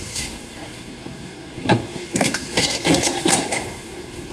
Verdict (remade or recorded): remade